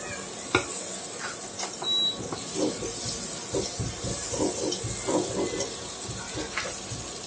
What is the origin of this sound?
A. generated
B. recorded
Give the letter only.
B